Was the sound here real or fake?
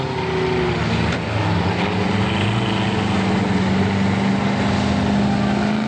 real